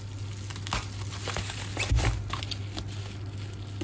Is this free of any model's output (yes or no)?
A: yes